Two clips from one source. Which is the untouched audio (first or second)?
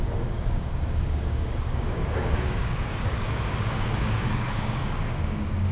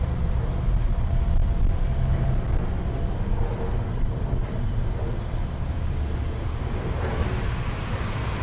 second